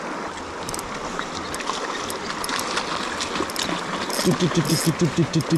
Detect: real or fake real